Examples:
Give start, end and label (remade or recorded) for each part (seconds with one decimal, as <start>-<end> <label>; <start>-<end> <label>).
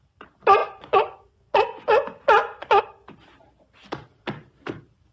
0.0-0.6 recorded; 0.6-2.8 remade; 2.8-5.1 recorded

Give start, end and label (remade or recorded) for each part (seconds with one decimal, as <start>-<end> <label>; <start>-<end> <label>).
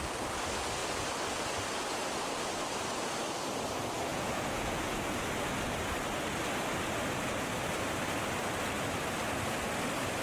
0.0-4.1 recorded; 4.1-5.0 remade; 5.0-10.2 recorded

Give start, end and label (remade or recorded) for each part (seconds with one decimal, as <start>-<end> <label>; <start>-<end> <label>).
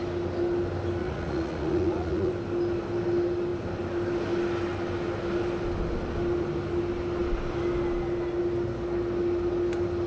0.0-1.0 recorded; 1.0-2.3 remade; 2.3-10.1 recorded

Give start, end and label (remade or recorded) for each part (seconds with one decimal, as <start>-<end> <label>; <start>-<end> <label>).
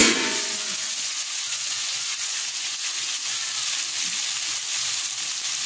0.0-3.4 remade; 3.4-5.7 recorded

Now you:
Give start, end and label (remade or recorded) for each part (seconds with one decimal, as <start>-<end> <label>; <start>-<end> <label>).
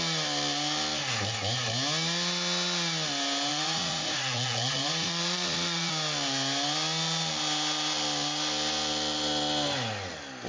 0.0-3.5 recorded; 3.5-5.9 remade; 5.9-10.5 recorded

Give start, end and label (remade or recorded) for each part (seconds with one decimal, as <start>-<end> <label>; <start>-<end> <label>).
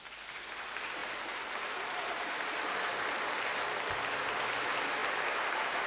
0.0-5.9 recorded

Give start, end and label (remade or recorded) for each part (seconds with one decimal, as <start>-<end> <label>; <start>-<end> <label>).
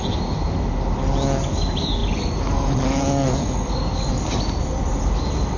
0.0-5.6 recorded